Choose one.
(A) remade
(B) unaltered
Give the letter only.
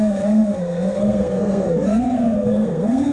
A